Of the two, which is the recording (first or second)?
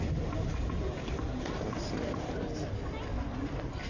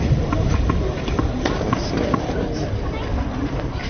first